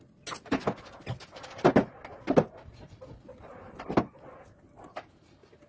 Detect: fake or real real